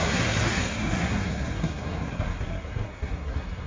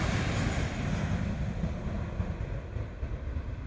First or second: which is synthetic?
first